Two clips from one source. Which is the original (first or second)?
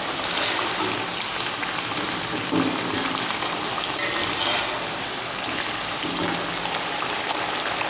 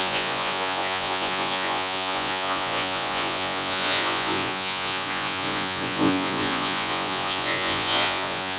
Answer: first